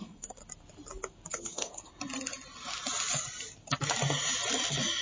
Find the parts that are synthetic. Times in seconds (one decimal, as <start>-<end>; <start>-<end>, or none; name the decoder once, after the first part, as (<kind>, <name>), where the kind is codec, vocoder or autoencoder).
0.0-0.4 (codec, SNAC); 1.3-1.9